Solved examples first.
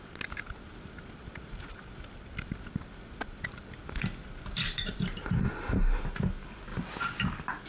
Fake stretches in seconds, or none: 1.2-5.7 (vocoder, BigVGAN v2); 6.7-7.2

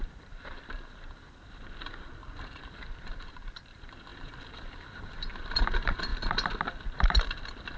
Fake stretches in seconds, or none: 0.0-6.1 (vocoder, BigVGAN v2); 7.0-7.8